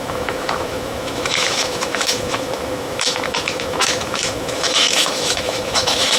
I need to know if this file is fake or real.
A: fake